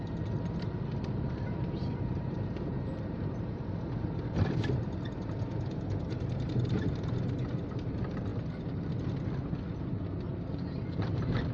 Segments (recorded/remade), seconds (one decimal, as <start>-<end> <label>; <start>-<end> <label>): 0.0-8.3 remade; 8.3-10.5 recorded; 10.5-11.5 remade